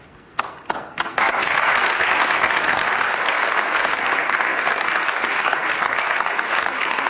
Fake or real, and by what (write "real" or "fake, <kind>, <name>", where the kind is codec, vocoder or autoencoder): fake, codec, SNAC